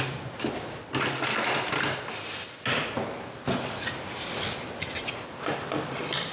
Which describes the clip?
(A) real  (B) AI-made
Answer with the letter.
A